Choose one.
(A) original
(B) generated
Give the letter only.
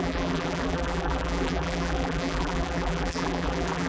B